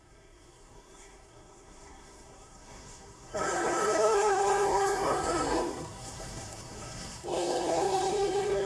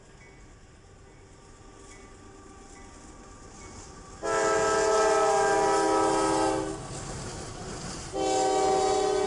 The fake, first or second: first